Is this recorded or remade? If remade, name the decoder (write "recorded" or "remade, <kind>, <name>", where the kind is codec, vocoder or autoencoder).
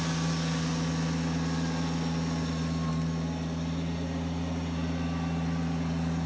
recorded